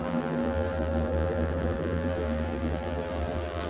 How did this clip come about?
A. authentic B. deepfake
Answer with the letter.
B